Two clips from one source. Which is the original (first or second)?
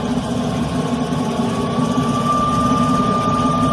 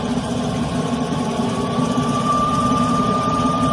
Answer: first